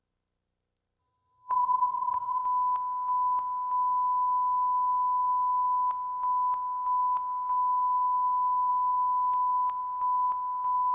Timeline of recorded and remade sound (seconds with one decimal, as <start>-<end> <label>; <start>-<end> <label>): 0.0-1.0 recorded; 1.0-2.4 remade; 2.4-10.9 recorded